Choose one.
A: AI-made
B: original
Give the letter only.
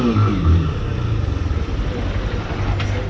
B